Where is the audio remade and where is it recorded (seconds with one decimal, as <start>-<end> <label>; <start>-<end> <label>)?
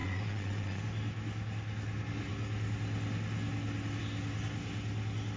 0.0-0.8 remade; 0.8-5.4 recorded